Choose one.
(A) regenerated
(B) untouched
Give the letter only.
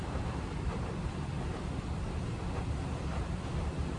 A